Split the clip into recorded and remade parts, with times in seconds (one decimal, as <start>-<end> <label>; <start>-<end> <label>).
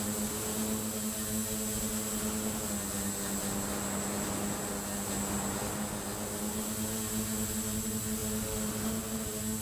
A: 0.0-9.6 recorded